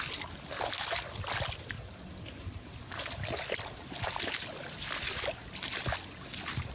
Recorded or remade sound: recorded